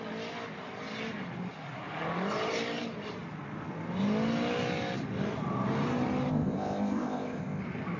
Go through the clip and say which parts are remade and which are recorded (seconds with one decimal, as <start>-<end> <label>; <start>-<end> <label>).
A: 0.0-6.3 recorded; 6.3-7.6 remade; 7.6-8.0 recorded